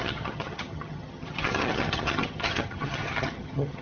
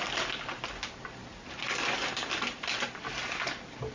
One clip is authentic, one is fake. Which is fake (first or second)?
first